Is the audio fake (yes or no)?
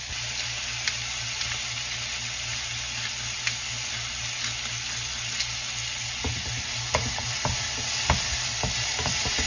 no